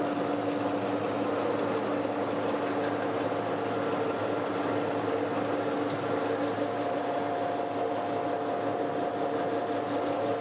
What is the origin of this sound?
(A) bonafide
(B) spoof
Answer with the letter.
A